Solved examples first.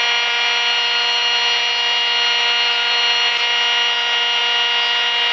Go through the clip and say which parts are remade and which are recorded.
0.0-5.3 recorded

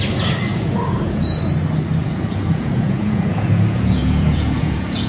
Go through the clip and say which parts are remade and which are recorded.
0.0-0.5 recorded; 0.5-1.4 remade; 1.4-2.0 recorded; 2.0-5.1 remade

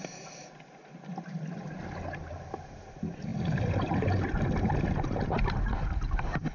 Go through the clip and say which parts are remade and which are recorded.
0.0-6.5 recorded

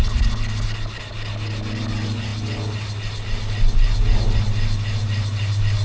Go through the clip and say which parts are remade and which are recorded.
0.0-5.8 recorded

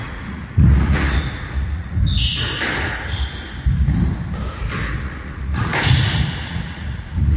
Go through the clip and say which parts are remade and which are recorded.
0.0-2.0 remade; 2.0-5.0 recorded; 5.0-5.7 remade; 5.7-6.5 recorded; 6.5-7.4 remade

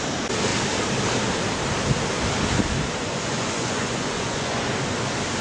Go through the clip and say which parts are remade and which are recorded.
0.0-3.0 recorded; 3.0-4.7 remade; 4.7-5.4 recorded

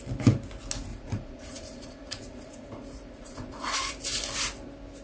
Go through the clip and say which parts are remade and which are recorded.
0.0-0.9 recorded; 0.9-3.9 remade; 3.9-5.0 recorded

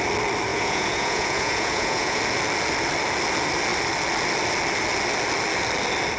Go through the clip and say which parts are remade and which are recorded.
0.0-0.5 recorded; 0.5-2.2 remade; 2.2-6.2 recorded